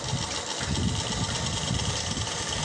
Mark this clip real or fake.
real